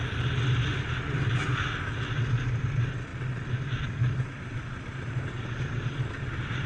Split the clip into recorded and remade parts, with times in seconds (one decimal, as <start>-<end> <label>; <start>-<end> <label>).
0.0-6.7 recorded